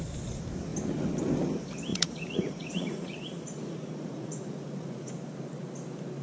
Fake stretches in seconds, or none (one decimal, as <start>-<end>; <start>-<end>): 1.9-5.1